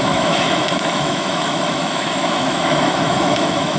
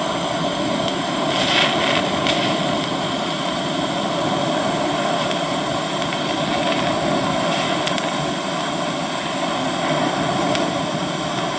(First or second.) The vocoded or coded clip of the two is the first